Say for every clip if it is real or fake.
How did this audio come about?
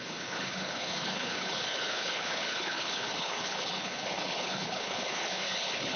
fake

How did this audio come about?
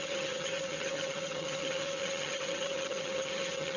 fake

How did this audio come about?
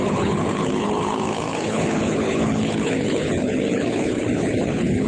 fake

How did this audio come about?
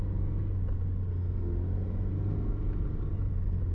real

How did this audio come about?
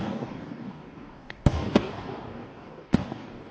fake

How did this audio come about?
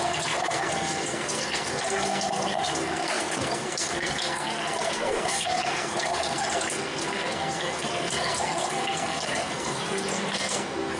fake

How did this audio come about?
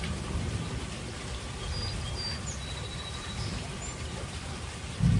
fake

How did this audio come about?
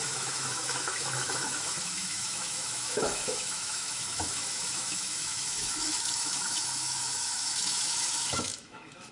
fake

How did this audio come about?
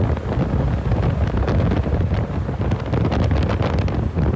real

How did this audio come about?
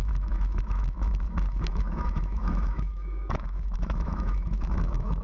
fake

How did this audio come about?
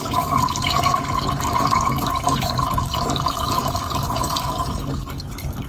fake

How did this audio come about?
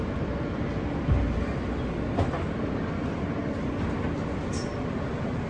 real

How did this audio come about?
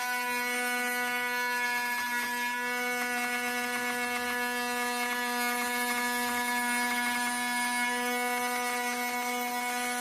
real